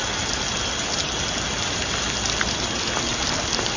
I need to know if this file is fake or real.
real